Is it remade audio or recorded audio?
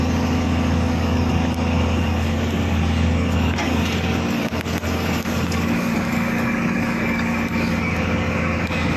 remade